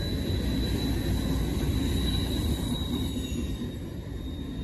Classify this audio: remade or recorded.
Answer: recorded